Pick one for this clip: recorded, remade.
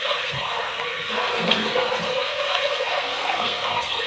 remade